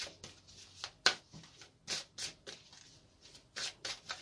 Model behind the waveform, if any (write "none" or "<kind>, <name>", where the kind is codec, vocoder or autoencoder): none